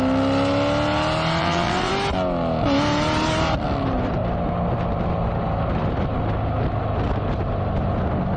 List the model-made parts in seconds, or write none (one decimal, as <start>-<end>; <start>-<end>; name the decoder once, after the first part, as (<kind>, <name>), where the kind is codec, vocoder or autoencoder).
1.4-1.9 (vocoder, WaveNeXt)